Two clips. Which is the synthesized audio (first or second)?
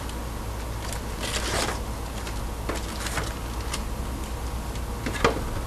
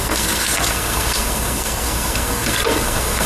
second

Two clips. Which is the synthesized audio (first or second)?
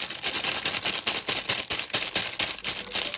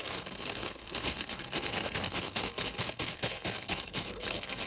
second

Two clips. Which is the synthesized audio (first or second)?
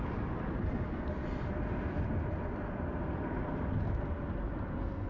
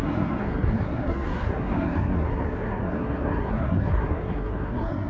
second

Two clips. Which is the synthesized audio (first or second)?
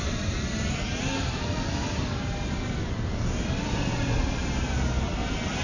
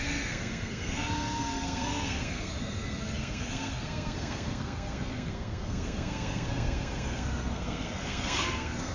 second